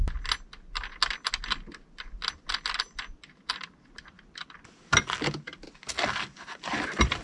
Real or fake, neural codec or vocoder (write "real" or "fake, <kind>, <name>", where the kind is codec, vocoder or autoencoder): real